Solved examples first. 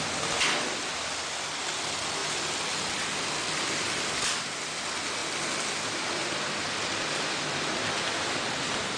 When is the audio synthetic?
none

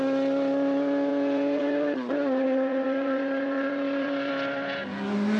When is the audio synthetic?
1.1-4.3 (vocoder, Vocos)

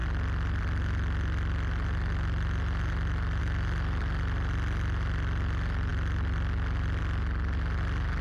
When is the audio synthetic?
none

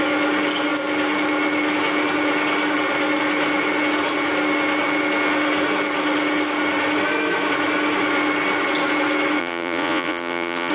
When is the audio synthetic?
9.4-10.7 (vocoder, Vocos)

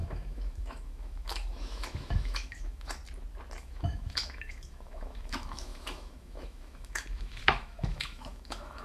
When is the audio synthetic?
0.0-3.0 (autoencoder, DAC-VAE); 3.6-8.8

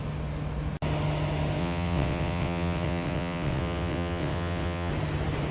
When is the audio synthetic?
1.6-4.9 (vocoder, WaveNeXt)

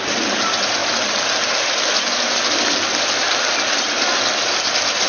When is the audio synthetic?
none